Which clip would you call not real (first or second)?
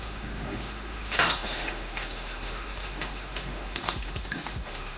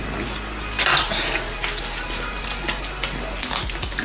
first